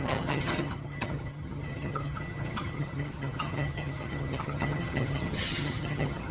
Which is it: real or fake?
fake